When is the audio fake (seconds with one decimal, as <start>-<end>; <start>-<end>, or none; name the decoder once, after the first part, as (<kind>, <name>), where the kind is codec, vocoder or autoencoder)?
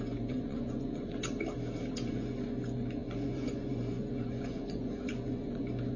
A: 0.0-1.1 (vocoder, Vocos); 2.1-6.0